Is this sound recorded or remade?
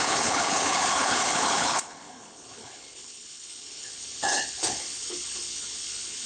remade